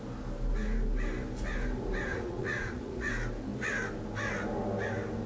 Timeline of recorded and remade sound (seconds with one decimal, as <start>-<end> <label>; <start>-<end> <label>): 0.0-2.1 recorded; 2.1-3.1 remade; 3.1-5.3 recorded